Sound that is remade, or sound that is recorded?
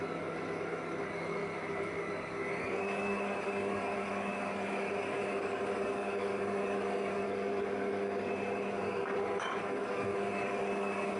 remade